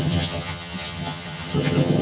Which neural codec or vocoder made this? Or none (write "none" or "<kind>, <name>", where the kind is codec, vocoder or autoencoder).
vocoder, HiFi-GAN